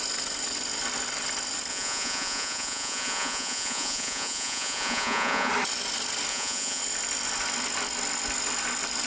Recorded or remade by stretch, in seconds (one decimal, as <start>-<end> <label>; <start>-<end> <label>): 0.0-1.7 recorded; 1.7-5.5 remade; 5.5-6.3 recorded; 6.3-6.8 remade; 6.8-9.1 recorded